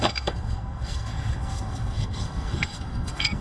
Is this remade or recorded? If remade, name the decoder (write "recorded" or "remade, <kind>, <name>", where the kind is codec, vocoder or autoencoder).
remade, codec, SNAC